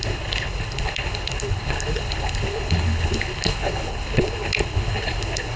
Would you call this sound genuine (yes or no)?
no